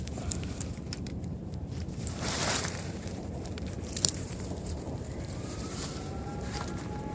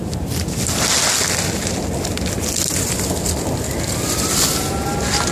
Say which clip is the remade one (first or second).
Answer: first